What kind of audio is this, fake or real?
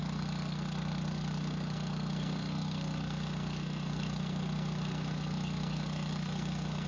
fake